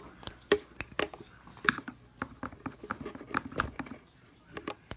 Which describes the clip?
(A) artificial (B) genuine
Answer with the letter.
B